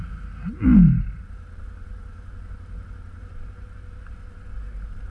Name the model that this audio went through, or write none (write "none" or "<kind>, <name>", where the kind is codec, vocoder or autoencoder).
none